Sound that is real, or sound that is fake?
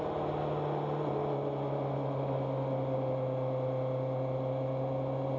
real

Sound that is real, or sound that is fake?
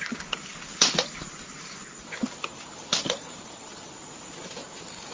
real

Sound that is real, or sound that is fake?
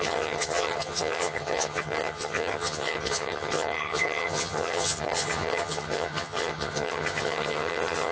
fake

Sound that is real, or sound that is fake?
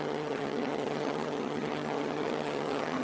fake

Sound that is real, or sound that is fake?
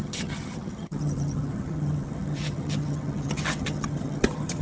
fake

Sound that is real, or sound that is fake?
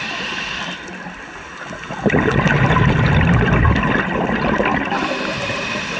real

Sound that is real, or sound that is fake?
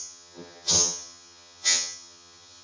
fake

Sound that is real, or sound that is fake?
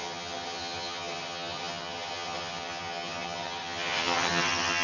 fake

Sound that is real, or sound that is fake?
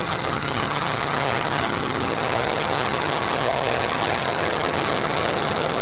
fake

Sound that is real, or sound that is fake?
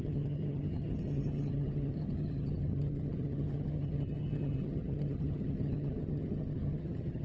fake